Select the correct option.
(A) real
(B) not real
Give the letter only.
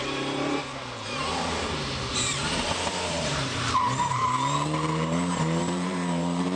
B